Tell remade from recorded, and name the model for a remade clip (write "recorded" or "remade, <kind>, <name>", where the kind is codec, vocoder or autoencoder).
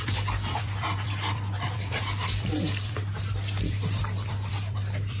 remade, vocoder, BigVGAN v2